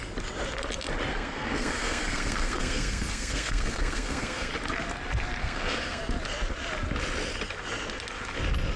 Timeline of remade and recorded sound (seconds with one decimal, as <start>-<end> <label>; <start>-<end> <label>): 0.0-1.1 recorded; 1.1-4.5 remade; 4.5-5.4 recorded; 5.4-6.0 remade; 6.0-8.8 recorded